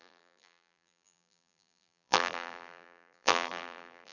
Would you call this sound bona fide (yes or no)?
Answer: no